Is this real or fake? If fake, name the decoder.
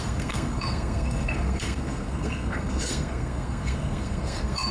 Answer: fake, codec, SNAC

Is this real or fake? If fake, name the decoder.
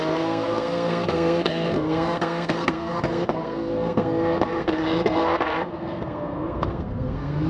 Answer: fake, codec, SNAC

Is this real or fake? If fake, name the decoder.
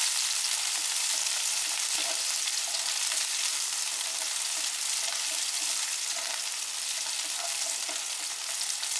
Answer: real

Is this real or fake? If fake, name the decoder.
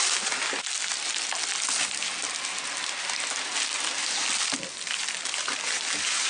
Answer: real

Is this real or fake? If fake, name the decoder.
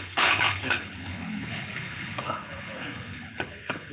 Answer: fake, codec, HILCodec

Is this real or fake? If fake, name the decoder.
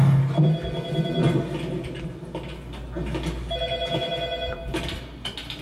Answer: real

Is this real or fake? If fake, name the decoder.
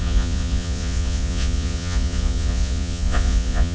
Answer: fake, vocoder, Vocos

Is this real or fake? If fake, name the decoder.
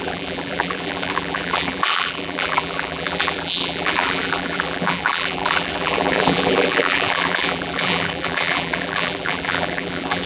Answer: fake, vocoder, BigVGAN v2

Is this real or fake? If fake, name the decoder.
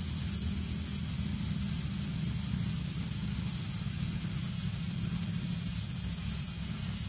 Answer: real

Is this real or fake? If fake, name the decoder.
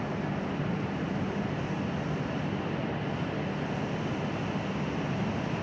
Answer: real